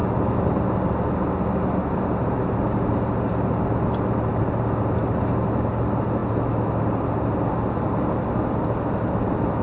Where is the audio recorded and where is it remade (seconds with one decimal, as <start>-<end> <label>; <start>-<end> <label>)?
0.0-9.6 recorded

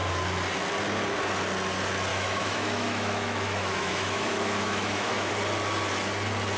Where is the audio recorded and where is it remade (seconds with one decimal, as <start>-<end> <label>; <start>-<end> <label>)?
0.0-2.1 recorded; 2.1-5.3 remade; 5.3-6.6 recorded

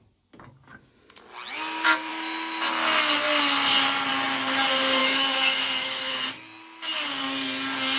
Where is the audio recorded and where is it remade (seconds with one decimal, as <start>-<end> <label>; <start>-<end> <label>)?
0.0-5.0 recorded; 5.0-6.1 remade; 6.1-8.0 recorded

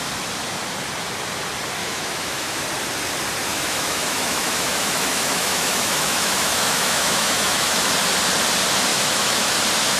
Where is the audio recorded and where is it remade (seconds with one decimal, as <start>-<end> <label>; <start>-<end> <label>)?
0.0-1.8 recorded; 1.8-2.6 remade; 2.6-3.5 recorded; 3.5-7.9 remade; 7.9-8.9 recorded; 8.9-9.5 remade; 9.5-10.0 recorded

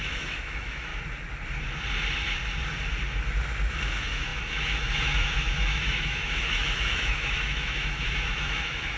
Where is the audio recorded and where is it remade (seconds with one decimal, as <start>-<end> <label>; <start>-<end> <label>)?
0.0-0.9 remade; 0.9-3.7 recorded; 3.7-9.0 remade

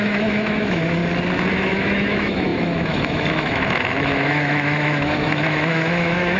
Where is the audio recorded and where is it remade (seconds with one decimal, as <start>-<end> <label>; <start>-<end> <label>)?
0.0-1.0 remade; 1.0-1.5 recorded; 1.5-6.4 remade